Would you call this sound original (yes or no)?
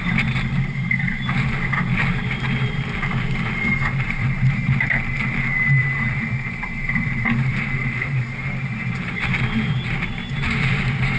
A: no